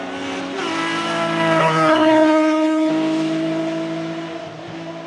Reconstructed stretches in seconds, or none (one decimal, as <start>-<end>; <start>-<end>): 1.6-2.9